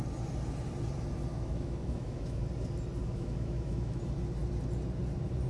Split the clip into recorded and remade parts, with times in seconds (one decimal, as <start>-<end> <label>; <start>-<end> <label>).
0.0-1.3 recorded; 1.3-2.4 remade; 2.4-3.0 recorded; 3.0-4.0 remade; 4.0-5.5 recorded